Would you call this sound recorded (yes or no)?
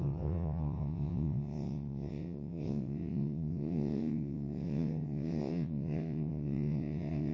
no